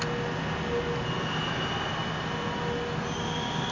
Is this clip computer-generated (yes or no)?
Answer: no